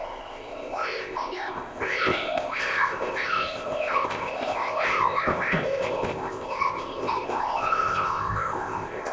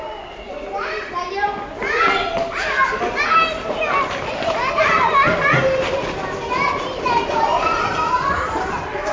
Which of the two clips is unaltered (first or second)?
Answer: second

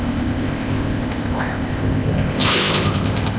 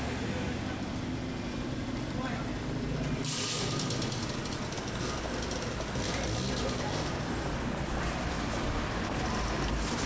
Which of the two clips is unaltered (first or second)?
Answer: second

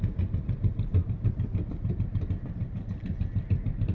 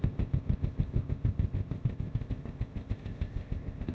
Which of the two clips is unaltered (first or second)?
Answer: first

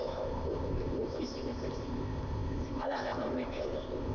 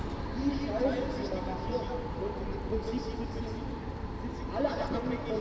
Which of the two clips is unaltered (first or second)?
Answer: second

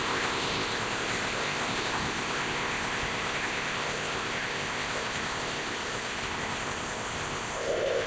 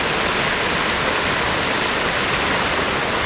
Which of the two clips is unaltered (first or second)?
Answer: second